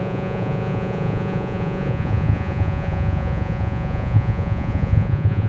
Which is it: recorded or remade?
remade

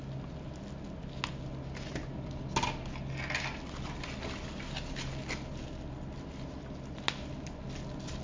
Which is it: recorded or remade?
recorded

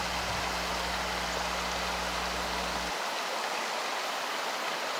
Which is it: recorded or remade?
recorded